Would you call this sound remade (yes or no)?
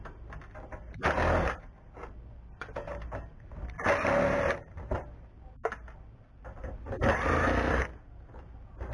no